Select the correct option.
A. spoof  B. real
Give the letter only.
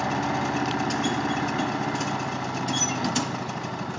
B